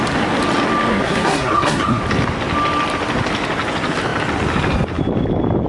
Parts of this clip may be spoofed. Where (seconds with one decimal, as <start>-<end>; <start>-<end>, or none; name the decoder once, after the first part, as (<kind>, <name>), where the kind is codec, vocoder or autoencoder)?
0.9-2.0 (codec, SNAC)